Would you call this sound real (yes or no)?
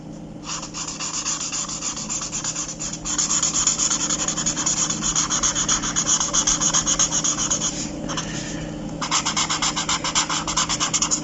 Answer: yes